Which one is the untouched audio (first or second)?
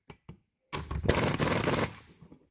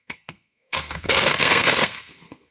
first